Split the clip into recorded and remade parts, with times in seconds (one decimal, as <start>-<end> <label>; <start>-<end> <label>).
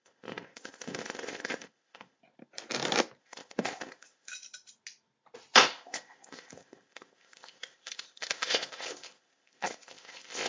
0.0-2.2 remade; 2.2-3.2 recorded; 3.2-4.3 remade; 4.3-5.6 recorded; 5.6-10.5 remade